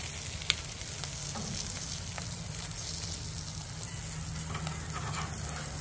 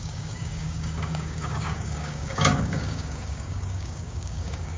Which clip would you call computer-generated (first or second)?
second